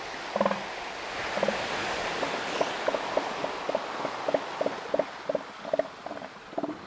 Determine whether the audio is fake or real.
real